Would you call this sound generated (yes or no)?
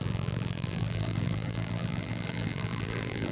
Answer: yes